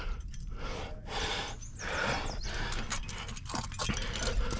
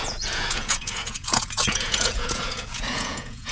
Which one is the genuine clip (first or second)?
first